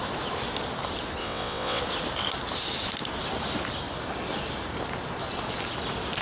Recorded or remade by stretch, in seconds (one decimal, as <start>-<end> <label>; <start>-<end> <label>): 0.0-1.2 recorded; 1.2-1.8 remade; 1.8-6.2 recorded